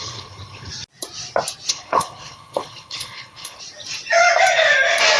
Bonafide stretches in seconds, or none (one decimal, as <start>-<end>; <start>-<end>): 0.7-1.7; 3.6-5.2